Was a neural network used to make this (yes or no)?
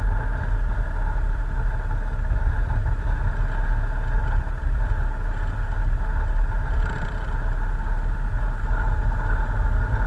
no